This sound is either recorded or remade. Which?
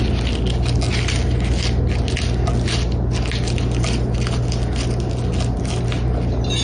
recorded